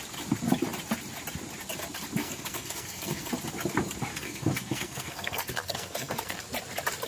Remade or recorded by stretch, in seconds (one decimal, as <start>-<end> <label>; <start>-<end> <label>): 0.0-2.2 recorded; 2.2-3.3 remade; 3.3-4.1 recorded; 4.1-6.4 remade; 6.4-7.1 recorded